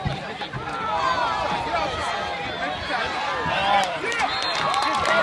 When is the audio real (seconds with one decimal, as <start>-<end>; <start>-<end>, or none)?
0.0-5.2